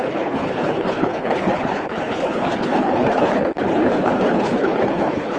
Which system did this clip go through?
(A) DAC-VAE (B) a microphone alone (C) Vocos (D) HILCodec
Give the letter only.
D